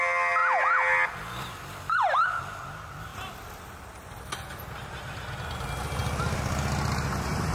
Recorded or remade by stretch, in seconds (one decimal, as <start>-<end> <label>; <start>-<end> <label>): 0.0-3.1 recorded; 3.1-4.6 remade; 4.6-6.0 recorded; 6.0-6.5 remade; 6.5-7.5 recorded